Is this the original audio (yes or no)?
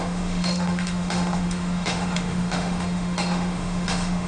no